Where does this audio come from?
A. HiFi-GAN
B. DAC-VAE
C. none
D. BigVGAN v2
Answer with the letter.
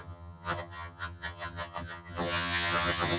A